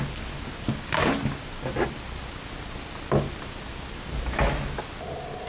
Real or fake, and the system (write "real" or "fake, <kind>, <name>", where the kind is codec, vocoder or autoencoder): real